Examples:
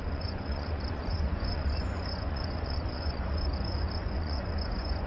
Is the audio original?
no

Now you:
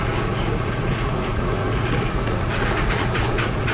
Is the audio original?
no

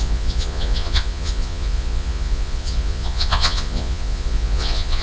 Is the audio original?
no